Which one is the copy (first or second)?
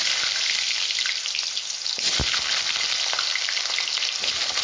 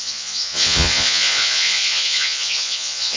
second